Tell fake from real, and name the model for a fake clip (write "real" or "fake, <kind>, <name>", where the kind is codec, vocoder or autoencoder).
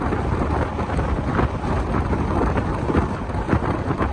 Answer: fake, vocoder, BigVGAN v2